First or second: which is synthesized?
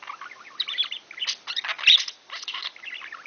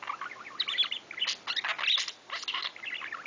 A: first